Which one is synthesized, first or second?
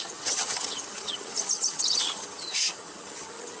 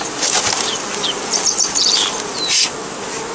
first